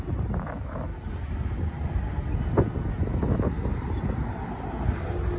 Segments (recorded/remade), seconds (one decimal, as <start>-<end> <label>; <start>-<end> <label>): 0.0-5.4 recorded